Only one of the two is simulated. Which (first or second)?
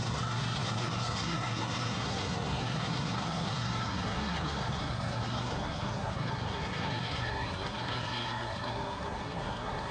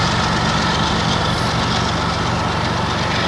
first